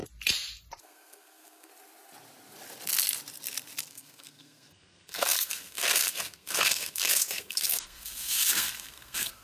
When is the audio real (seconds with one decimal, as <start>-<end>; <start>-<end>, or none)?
0.0-0.8; 1.7-3.9